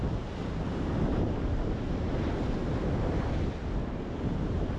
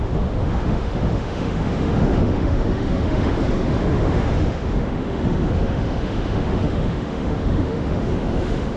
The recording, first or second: first